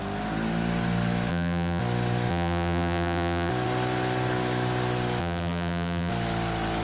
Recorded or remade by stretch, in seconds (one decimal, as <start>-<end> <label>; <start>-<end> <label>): 0.0-1.3 recorded; 1.3-1.8 remade; 1.8-2.3 recorded; 2.3-3.5 remade; 3.5-5.2 recorded; 5.2-6.1 remade; 6.1-6.8 recorded